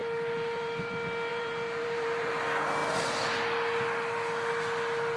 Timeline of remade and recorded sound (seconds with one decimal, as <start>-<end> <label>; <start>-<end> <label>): 0.0-0.9 remade; 0.9-1.3 recorded; 1.3-2.3 remade; 2.3-5.2 recorded

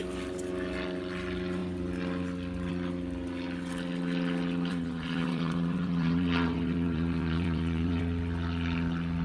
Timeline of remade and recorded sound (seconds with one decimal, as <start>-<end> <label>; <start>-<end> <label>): 0.0-4.7 recorded; 4.7-8.0 remade; 8.0-9.2 recorded

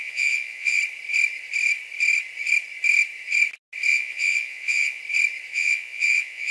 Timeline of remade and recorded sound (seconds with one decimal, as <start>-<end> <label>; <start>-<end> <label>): 0.0-0.8 remade; 0.8-3.9 recorded; 3.9-5.0 remade; 5.0-5.5 recorded; 5.5-6.5 remade

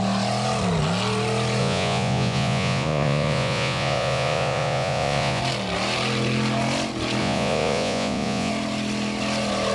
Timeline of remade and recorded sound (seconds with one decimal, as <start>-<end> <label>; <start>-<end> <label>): 0.0-1.6 recorded; 1.6-5.4 remade; 5.4-7.2 recorded; 7.2-8.5 remade; 8.5-9.7 recorded

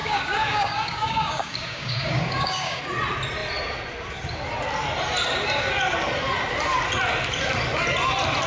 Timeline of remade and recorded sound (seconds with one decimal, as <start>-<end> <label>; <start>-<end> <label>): 0.0-2.8 remade; 2.8-8.5 recorded

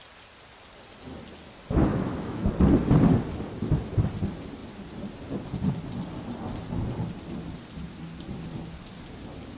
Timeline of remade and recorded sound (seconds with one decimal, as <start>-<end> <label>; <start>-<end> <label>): 0.0-1.9 recorded; 1.9-2.5 remade; 2.5-9.6 recorded